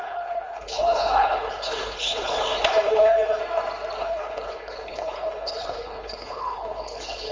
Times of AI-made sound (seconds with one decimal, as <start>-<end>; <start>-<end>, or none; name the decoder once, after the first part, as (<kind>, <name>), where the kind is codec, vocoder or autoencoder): 0.0-3.4 (codec, HILCodec); 4.0-7.3